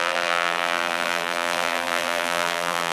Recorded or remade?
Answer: remade